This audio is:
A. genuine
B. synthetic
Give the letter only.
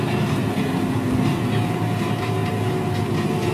A